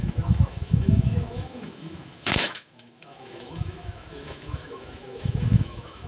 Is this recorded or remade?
remade